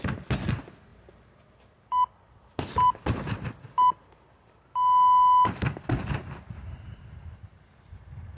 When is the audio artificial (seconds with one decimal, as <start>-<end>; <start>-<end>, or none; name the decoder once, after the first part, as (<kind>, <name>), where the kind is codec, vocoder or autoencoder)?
none